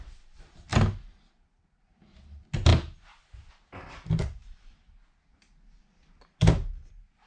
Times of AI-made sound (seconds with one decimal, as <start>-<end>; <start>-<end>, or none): none